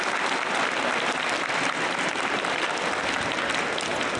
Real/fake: real